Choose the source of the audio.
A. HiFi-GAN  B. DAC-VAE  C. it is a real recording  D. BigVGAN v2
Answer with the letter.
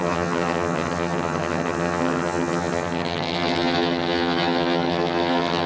A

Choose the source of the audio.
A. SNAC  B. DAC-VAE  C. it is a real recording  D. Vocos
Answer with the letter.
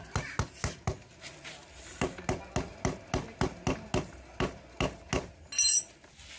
C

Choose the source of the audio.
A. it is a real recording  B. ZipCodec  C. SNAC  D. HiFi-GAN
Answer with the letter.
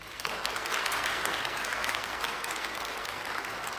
C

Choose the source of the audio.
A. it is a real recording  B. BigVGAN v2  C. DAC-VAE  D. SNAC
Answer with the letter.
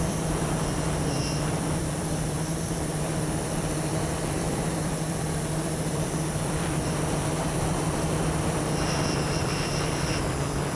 B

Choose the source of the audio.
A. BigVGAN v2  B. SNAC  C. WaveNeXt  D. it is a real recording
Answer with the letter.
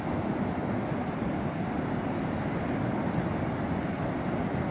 D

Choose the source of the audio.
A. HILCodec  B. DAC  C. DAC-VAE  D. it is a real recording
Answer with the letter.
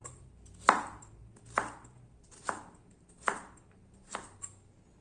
D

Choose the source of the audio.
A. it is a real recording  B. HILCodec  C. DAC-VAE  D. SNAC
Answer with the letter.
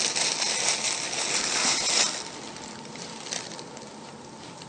A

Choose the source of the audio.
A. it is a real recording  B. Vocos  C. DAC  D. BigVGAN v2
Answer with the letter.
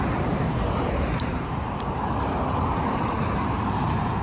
D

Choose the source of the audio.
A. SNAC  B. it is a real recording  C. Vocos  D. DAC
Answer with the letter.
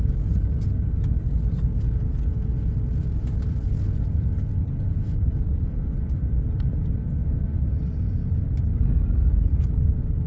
B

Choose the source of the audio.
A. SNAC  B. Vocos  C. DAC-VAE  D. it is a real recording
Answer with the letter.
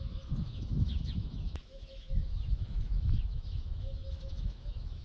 C